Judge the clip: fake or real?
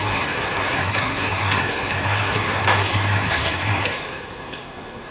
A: fake